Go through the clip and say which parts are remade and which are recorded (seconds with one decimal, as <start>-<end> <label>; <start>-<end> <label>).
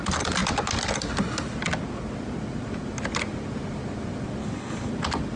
0.0-4.4 recorded; 4.4-4.9 remade; 4.9-5.4 recorded